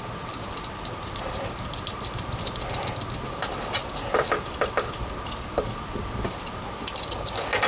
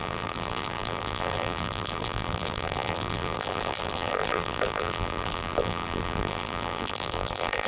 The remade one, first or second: second